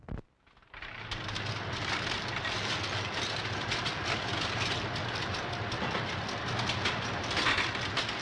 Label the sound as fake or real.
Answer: real